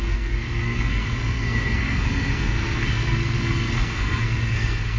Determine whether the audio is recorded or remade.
remade